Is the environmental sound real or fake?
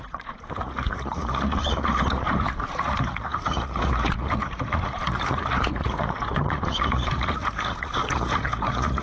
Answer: fake